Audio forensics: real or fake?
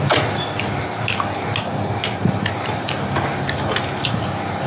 real